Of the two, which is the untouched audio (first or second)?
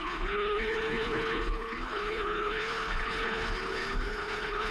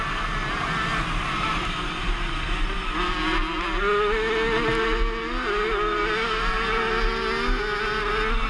second